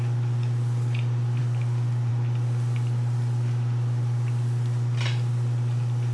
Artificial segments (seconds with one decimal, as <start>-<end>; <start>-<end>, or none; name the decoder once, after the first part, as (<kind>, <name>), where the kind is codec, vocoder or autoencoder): none

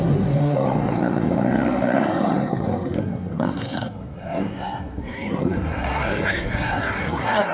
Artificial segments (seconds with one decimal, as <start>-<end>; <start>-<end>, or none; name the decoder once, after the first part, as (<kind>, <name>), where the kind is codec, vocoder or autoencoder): 0.0-7.5 (codec, SNAC)

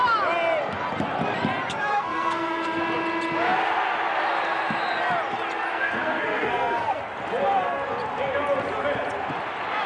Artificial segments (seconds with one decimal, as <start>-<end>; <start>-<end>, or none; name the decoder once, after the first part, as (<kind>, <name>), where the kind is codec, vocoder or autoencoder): 1.9-2.8 (codec, SNAC); 5.7-7.0

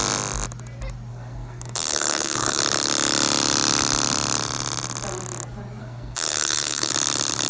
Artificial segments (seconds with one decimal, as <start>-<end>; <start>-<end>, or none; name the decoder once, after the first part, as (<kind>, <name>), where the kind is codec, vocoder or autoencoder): 1.1-2.6 (codec, SNAC); 5.8-6.9

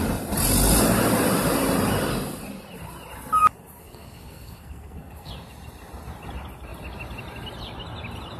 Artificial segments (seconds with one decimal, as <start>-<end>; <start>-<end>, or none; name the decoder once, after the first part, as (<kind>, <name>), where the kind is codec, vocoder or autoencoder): 3.8-5.3 (codec, SNAC)

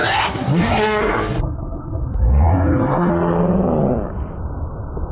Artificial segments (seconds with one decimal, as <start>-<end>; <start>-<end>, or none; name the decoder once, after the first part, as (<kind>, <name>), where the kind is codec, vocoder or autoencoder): 0.0-3.1 (codec, SNAC)